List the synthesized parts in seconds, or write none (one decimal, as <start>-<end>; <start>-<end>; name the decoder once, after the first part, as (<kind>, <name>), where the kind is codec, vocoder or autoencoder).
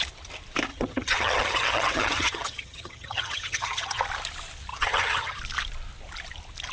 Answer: 0.7-4.0 (vocoder, HiFi-GAN); 4.7-5.4